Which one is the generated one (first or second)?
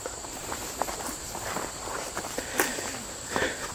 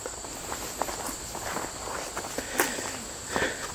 first